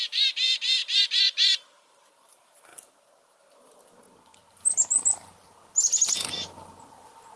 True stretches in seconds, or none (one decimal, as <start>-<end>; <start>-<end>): 0.0-7.4